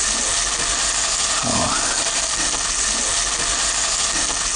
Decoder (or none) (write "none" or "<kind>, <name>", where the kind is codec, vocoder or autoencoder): none